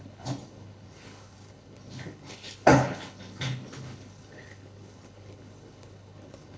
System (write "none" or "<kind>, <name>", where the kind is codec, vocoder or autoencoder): codec, HILCodec